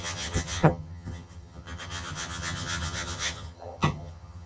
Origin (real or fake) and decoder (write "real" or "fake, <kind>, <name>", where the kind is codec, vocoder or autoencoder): fake, vocoder, HiFi-GAN